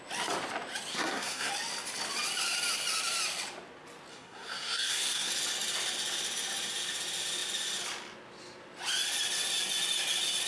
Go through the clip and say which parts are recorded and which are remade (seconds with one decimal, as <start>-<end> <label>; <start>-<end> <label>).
0.0-0.9 recorded; 0.9-1.5 remade; 1.5-4.1 recorded; 4.1-5.3 remade; 5.3-10.5 recorded